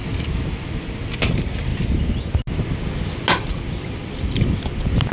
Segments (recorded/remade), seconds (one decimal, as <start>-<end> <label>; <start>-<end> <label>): 0.0-5.1 recorded

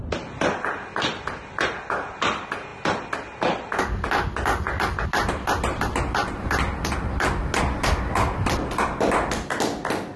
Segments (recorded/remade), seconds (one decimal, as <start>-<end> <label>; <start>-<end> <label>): 0.0-10.2 recorded